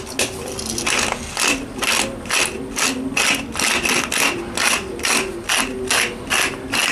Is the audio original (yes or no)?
yes